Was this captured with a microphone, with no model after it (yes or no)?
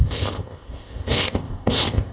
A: no